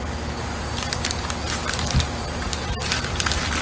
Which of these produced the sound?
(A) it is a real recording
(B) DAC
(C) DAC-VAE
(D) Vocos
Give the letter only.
A